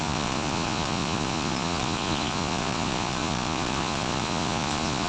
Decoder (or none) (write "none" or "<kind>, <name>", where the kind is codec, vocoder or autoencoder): vocoder, Vocos